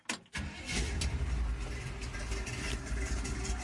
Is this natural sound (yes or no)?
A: yes